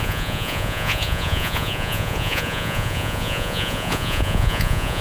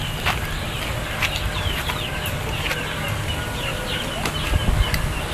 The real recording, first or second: second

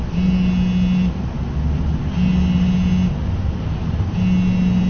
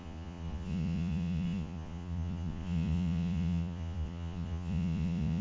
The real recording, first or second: first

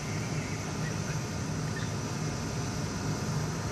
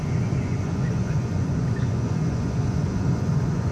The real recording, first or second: first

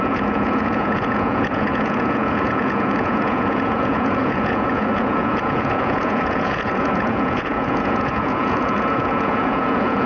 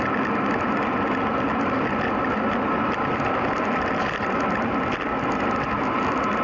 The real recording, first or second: second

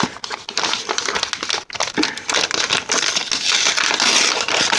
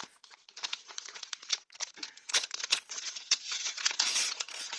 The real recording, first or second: first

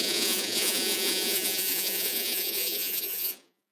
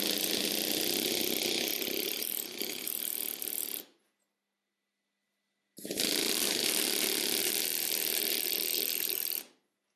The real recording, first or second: second